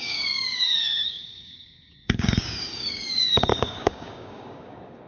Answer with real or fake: fake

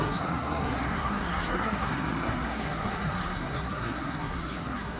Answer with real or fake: fake